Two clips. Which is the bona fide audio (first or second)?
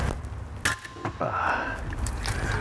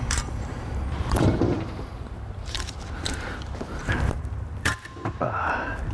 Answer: first